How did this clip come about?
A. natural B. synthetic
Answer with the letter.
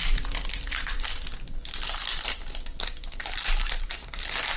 A